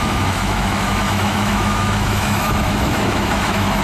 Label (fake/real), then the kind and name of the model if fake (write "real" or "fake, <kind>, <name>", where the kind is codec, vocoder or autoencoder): fake, autoencoder, DAC-VAE